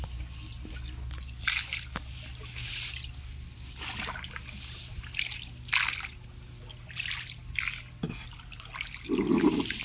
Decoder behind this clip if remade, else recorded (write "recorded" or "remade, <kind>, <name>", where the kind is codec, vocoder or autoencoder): recorded